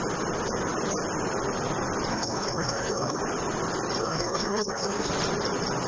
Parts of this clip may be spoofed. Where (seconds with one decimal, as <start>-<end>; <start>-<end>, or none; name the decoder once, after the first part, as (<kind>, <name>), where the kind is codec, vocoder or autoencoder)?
2.1-3.2 (codec, SNAC); 4.0-5.1

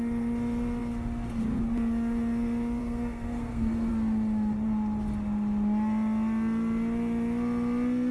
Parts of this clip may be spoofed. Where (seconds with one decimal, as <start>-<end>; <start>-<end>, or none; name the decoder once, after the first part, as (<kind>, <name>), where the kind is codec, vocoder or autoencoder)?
2.8-3.9 (codec, SNAC)

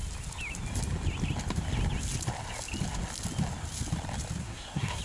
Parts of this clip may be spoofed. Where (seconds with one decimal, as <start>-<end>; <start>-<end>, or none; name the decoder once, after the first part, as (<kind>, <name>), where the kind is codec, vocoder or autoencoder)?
4.4-5.0 (codec, SNAC)

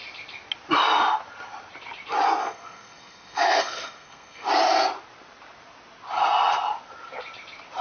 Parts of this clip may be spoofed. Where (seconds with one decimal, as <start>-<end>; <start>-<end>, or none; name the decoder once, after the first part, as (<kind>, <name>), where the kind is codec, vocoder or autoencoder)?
2.4-4.5 (codec, SNAC)

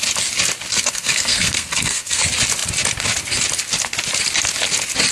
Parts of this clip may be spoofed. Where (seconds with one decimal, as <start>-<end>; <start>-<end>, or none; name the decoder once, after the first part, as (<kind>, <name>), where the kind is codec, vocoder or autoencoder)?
0.7-2.2 (codec, SNAC)